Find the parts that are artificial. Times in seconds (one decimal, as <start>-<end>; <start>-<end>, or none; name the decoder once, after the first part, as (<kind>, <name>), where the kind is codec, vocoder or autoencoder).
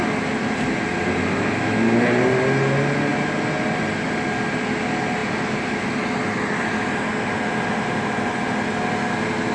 none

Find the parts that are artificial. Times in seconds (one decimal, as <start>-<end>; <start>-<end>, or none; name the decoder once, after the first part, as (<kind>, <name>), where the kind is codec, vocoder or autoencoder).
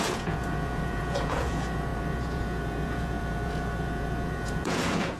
0.0-5.2 (vocoder, Vocos)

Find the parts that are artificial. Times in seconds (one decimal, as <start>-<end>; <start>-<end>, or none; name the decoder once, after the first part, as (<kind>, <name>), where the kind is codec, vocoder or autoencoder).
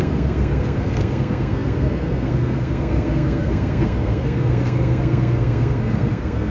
0.0-6.5 (codec, SNAC)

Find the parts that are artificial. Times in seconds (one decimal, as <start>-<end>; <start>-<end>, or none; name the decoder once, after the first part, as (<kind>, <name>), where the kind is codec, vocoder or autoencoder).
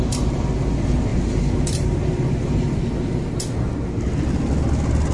1.1-3.3 (vocoder, BigVGAN v2)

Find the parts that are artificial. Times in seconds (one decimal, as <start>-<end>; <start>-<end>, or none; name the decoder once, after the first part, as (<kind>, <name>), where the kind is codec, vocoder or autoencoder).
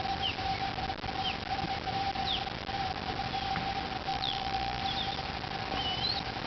4.1-4.8 (vocoder, Vocos)